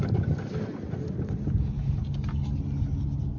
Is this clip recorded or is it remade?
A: recorded